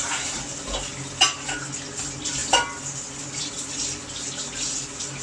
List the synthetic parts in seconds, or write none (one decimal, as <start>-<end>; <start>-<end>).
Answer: none